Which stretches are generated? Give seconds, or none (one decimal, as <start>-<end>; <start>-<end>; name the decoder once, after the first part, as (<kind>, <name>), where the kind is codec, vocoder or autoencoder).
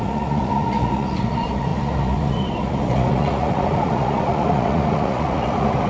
0.0-5.9 (vocoder, Vocos)